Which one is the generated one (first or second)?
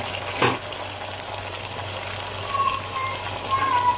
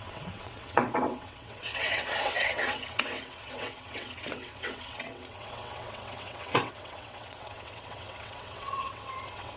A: second